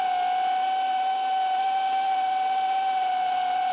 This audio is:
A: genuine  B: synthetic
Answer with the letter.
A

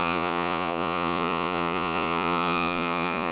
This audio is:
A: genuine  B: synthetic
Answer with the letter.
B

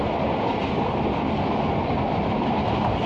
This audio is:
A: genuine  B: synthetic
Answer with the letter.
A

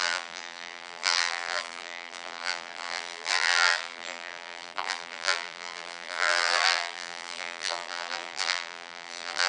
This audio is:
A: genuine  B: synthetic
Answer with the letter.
B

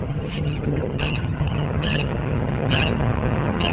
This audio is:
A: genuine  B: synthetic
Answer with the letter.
B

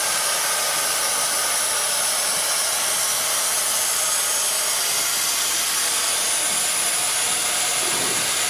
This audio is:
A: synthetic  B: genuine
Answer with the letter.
B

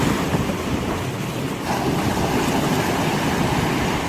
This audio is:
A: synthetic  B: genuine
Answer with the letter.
B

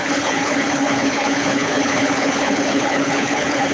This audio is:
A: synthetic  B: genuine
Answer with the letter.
A